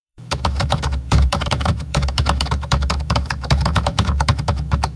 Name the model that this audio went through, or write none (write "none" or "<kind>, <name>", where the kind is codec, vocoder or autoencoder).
autoencoder, DAC-VAE